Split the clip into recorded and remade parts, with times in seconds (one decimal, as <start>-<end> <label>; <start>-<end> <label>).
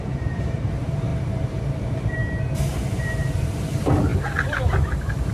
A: 0.0-1.1 remade; 1.1-2.9 recorded; 2.9-4.1 remade; 4.1-5.3 recorded